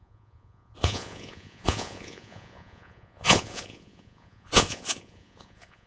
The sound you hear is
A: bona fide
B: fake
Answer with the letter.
B